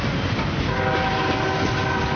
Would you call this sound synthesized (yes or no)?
no